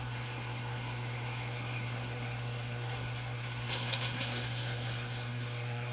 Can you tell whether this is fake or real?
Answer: fake